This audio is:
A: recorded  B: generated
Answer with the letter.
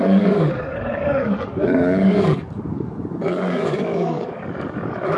B